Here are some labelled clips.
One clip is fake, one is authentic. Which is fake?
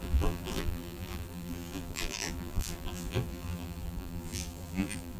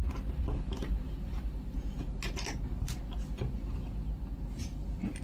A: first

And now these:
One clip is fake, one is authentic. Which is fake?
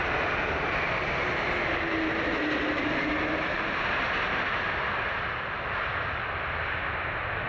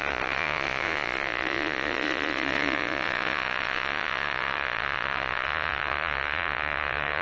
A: second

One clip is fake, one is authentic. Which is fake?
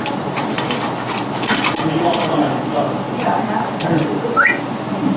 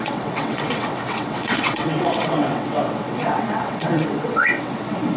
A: second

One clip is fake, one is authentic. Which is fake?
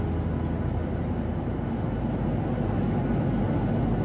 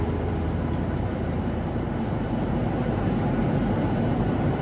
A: second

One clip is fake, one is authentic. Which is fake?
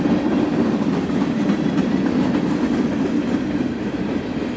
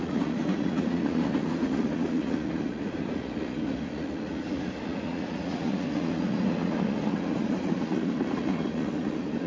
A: second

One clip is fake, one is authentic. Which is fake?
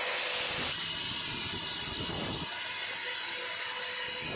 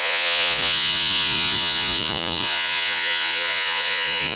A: second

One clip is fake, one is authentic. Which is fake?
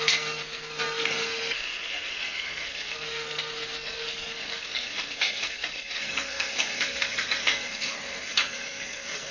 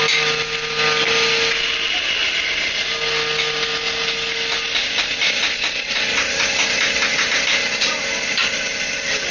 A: first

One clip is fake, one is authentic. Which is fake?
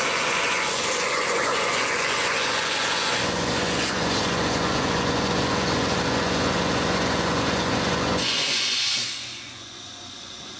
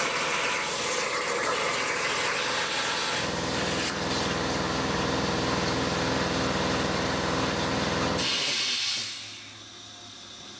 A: first